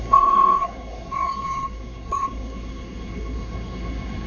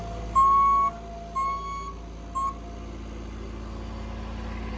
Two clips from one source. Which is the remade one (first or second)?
first